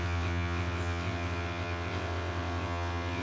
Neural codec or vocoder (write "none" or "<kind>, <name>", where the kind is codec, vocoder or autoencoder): vocoder, WaveNeXt